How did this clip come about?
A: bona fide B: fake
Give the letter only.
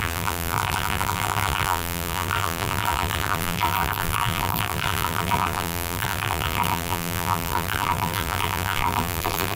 B